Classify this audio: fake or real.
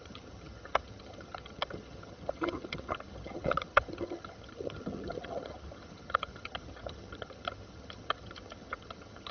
fake